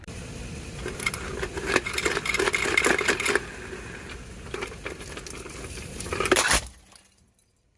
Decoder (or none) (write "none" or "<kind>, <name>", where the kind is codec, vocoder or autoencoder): none